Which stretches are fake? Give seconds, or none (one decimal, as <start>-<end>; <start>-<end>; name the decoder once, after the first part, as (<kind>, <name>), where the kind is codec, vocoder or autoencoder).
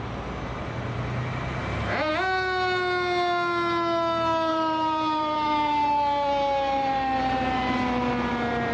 1.6-2.1 (vocoder, BigVGAN v2); 4.5-8.1